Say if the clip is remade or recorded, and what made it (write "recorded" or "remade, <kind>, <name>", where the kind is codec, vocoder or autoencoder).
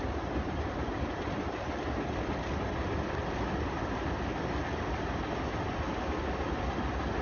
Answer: recorded